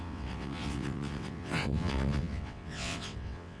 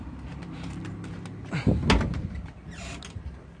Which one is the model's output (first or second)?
first